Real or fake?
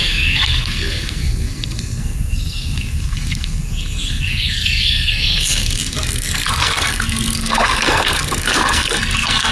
fake